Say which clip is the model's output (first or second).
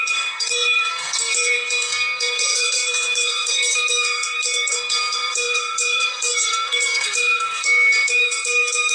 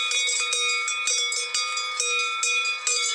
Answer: first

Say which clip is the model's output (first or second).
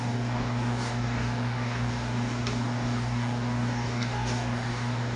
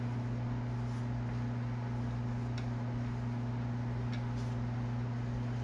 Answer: first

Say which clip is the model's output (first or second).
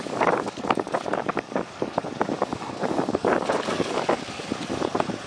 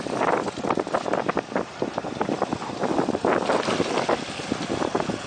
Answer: first